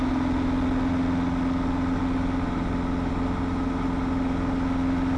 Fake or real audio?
real